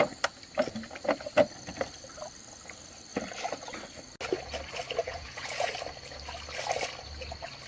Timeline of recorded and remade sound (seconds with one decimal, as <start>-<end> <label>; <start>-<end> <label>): 0.0-5.0 recorded; 5.0-5.7 remade; 5.7-7.7 recorded